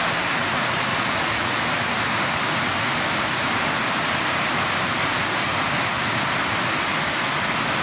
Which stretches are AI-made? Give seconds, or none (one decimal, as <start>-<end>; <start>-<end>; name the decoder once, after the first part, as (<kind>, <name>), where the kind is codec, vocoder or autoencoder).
0.9-1.6 (vocoder, Vocos)